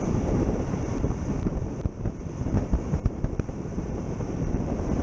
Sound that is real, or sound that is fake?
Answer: fake